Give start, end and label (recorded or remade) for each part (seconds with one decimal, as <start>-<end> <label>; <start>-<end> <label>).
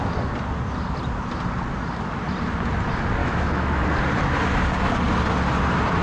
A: 0.0-3.2 recorded; 3.2-3.8 remade; 3.8-6.0 recorded